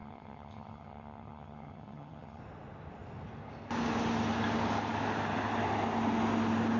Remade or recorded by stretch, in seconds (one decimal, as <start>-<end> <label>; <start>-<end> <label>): 0.0-2.4 remade; 2.4-6.8 recorded